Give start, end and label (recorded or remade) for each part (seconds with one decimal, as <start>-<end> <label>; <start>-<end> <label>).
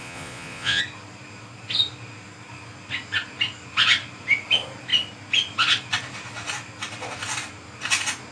0.0-0.8 remade; 0.8-8.3 recorded